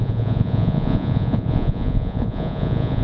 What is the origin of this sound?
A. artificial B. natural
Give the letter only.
A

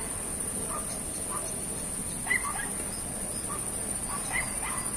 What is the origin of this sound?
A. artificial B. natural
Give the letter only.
B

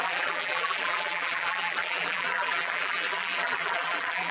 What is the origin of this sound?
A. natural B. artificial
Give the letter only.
B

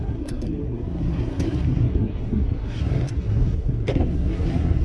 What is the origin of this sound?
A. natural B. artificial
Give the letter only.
B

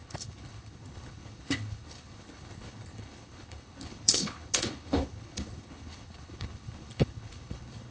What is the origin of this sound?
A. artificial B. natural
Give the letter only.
A